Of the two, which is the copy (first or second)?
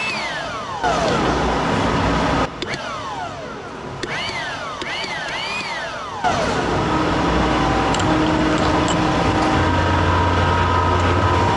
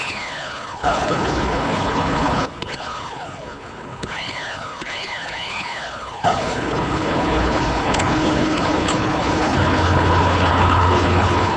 second